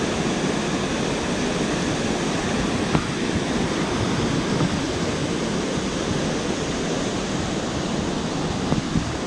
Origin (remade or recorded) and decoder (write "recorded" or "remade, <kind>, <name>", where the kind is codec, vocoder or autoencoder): recorded